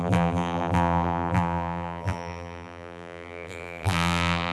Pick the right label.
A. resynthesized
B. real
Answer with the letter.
A